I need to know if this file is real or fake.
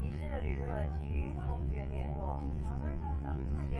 fake